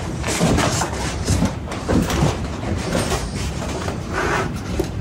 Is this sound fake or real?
fake